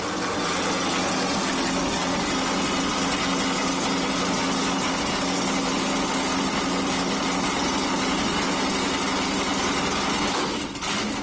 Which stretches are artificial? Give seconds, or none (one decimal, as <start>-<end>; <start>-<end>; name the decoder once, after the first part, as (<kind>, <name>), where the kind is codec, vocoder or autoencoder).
none